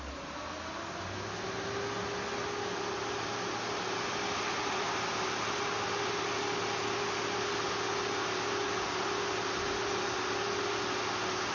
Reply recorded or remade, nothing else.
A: recorded